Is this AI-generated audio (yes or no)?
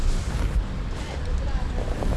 no